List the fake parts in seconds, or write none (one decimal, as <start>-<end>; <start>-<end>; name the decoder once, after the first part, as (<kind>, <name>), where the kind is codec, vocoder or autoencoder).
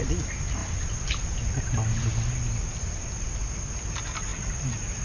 4.3-5.0 (vocoder, BigVGAN v2)